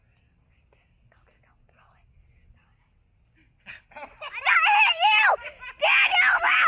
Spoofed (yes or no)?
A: no